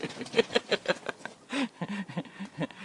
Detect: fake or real fake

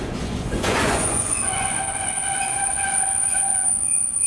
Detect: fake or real fake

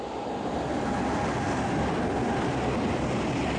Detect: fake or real real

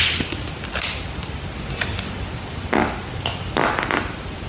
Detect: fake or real real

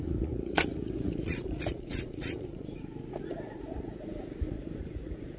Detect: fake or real fake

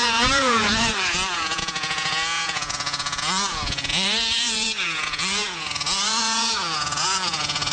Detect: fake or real fake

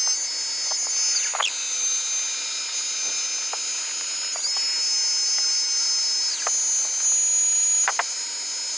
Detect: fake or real real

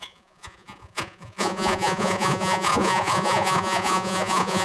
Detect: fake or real fake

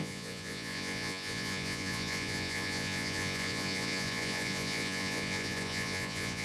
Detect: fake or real fake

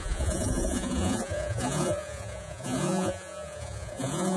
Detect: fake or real fake